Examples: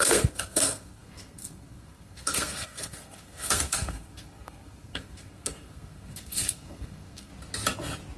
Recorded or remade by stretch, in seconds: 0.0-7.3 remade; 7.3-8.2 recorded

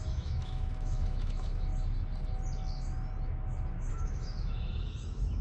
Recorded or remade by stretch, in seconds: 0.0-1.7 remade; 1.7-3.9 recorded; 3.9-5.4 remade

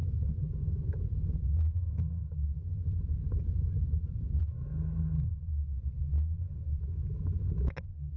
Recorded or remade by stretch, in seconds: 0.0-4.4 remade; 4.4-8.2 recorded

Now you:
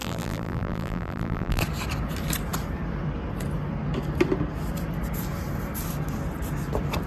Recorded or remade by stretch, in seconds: 0.0-1.6 remade; 1.6-7.1 recorded

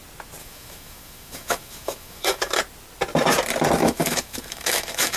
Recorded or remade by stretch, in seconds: 0.0-0.4 recorded; 0.4-2.6 remade; 2.6-3.8 recorded; 3.8-5.2 remade